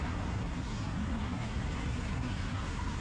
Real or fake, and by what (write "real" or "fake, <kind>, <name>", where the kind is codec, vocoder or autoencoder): fake, codec, SNAC